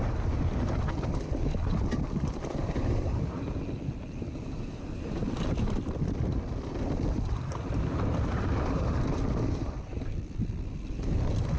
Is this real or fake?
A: fake